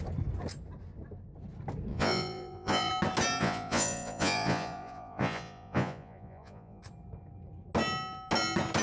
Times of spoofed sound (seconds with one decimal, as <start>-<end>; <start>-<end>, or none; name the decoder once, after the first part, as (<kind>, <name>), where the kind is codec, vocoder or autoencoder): 1.9-2.9 (vocoder, Vocos); 3.4-6.8